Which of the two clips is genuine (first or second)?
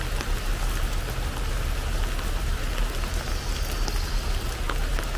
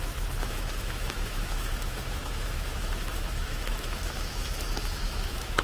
first